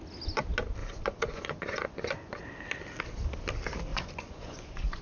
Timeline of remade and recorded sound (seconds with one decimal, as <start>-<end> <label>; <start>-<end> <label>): 0.0-0.8 recorded; 0.8-2.4 remade; 2.4-3.9 recorded; 3.9-5.0 remade